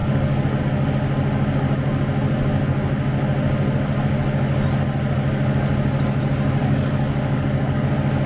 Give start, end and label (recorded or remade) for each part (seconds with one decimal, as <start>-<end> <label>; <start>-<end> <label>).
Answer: 0.0-0.6 remade; 0.6-6.6 recorded; 6.6-7.9 remade; 7.9-8.3 recorded